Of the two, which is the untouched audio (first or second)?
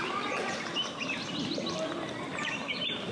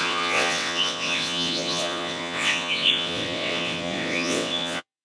first